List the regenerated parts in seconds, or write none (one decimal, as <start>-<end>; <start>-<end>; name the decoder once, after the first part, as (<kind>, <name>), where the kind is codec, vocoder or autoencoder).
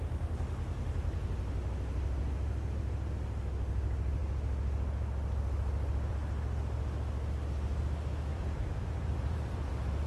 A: 8.3-10.1 (vocoder, BigVGAN v2)